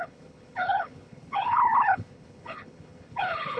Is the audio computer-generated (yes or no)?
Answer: yes